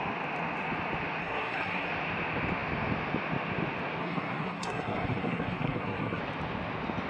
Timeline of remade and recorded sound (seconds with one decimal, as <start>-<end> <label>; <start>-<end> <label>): 0.0-1.2 recorded; 1.2-1.9 remade; 1.9-4.0 recorded; 4.0-6.2 remade; 6.2-7.1 recorded